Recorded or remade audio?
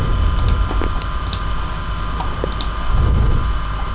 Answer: recorded